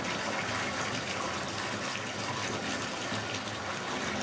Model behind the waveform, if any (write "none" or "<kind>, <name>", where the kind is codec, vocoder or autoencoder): none